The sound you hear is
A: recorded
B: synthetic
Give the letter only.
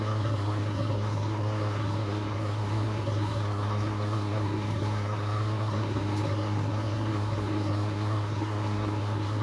B